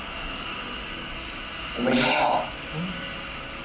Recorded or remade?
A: recorded